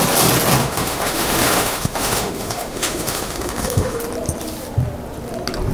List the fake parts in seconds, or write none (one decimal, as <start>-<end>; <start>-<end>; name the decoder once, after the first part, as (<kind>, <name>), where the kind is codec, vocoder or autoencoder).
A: 0.6-4.0 (autoencoder, DAC-VAE)